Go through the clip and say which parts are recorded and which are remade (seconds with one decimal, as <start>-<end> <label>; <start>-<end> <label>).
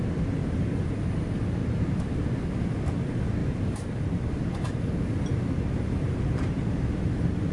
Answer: 0.0-0.4 recorded; 0.4-1.0 remade; 1.0-1.6 recorded; 1.6-2.7 remade; 2.7-3.4 recorded; 3.4-4.8 remade; 4.8-5.3 recorded; 5.3-7.5 remade